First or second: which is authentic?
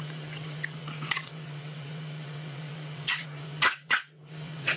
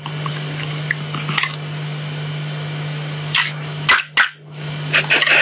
second